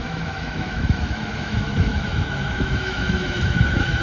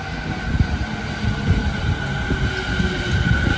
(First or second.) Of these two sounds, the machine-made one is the first